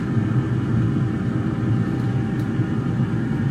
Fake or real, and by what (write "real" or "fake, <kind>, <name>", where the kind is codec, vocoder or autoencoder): real